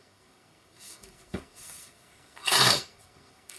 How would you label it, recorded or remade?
remade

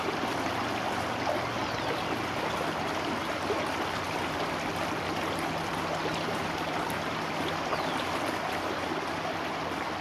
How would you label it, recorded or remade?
recorded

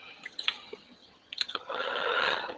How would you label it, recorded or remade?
remade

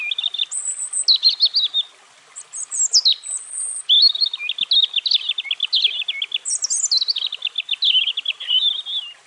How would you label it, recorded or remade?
recorded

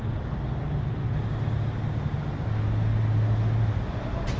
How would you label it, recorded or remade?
recorded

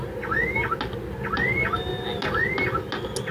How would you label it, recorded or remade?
recorded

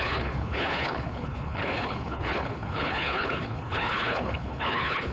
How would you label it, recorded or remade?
remade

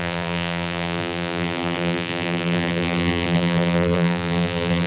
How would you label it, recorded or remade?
remade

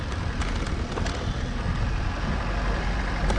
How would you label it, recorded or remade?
recorded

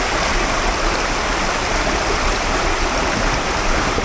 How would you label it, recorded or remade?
recorded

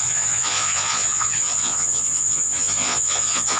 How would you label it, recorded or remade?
remade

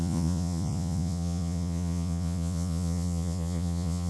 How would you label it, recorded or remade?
remade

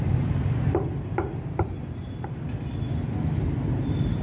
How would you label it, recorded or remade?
recorded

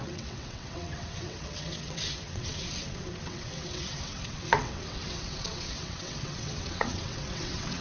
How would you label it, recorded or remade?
remade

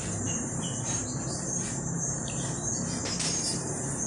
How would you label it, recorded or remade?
remade